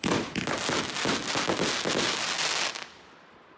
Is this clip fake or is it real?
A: real